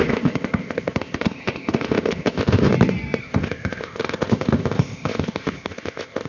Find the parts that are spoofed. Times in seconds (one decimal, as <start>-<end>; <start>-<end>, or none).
0.0-2.7; 3.2-6.3